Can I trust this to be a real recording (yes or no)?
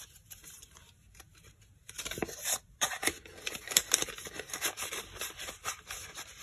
no